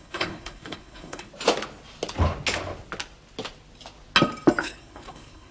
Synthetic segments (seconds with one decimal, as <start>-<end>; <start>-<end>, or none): 0.0-1.3; 4.6-5.5